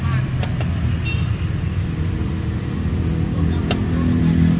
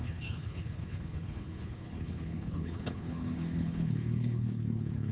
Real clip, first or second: first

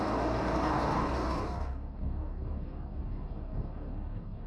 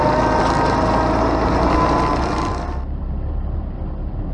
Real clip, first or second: second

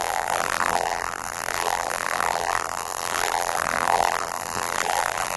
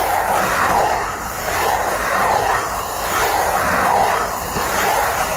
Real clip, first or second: second